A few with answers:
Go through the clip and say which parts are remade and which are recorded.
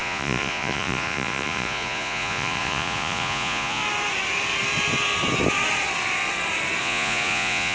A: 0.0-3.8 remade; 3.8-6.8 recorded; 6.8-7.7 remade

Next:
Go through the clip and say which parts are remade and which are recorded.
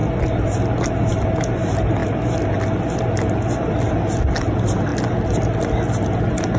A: 0.0-6.6 recorded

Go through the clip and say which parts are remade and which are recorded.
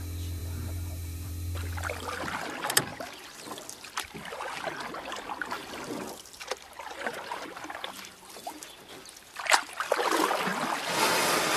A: 0.0-0.4 recorded; 0.4-1.3 remade; 1.3-11.6 recorded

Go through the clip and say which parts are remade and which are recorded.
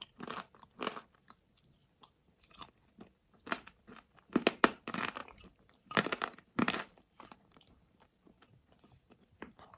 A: 0.0-5.2 recorded; 5.2-8.4 remade; 8.4-9.8 recorded